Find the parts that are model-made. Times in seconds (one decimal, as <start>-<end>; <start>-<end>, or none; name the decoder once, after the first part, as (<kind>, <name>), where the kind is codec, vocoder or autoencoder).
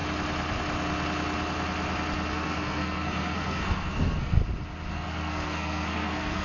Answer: 2.3-4.4 (codec, SNAC); 4.9-6.4